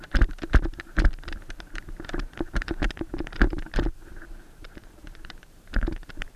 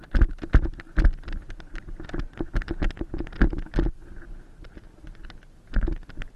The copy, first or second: first